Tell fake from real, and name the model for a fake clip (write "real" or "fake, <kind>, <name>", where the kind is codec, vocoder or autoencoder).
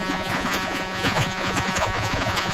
fake, vocoder, Vocos